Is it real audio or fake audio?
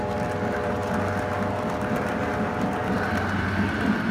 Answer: real